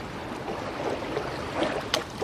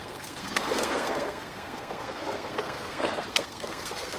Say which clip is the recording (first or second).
first